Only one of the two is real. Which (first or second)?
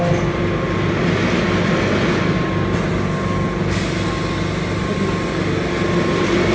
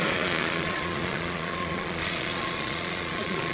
first